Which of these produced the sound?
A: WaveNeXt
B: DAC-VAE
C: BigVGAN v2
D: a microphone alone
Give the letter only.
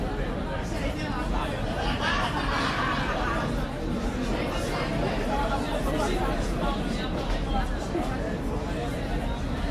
D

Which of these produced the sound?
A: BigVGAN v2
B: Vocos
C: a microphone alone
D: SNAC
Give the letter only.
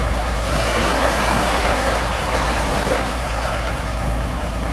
D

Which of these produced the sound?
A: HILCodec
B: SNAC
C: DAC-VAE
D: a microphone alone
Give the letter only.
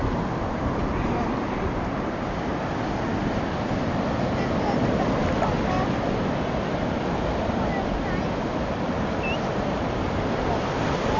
D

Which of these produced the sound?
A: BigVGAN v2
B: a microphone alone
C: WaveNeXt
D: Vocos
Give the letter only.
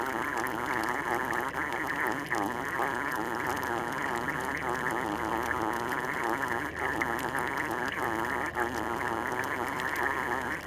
B